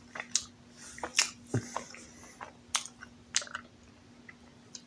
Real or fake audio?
real